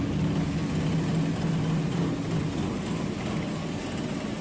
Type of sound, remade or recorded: recorded